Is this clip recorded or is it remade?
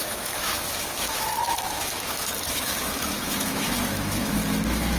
remade